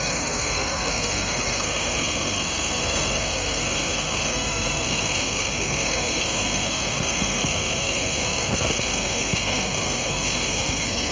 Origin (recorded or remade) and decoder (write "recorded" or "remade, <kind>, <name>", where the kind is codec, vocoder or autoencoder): remade, codec, SNAC